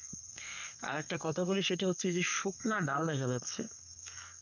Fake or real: fake